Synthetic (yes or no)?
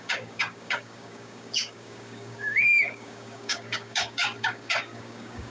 yes